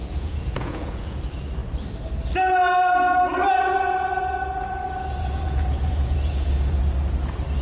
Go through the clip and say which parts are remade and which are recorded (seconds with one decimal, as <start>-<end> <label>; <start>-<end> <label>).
0.0-1.2 remade; 1.2-5.2 recorded; 5.2-6.8 remade; 6.8-7.6 recorded